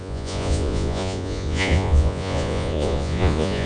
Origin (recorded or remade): remade